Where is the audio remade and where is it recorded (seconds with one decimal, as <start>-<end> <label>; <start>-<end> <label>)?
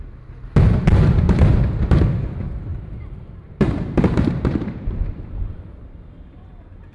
0.0-0.9 recorded; 0.9-1.6 remade; 1.6-2.7 recorded; 2.7-5.0 remade; 5.0-6.9 recorded